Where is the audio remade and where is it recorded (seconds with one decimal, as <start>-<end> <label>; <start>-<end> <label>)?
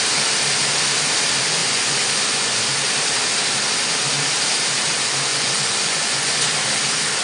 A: 0.0-1.6 recorded; 1.6-2.6 remade; 2.6-5.3 recorded; 5.3-6.5 remade; 6.5-7.2 recorded